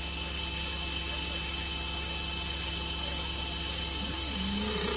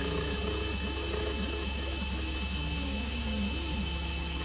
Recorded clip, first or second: first